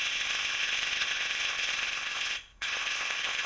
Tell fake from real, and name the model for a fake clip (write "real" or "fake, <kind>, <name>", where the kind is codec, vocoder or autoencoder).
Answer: fake, codec, ZipCodec